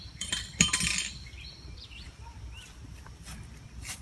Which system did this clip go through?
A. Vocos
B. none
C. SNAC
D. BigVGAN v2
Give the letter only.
D